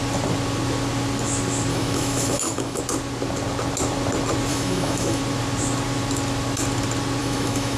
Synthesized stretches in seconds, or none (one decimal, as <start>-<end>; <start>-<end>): 1.7-2.8; 4.5-5.2; 7.2-7.8